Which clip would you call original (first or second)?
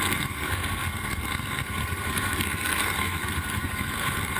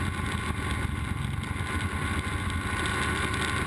second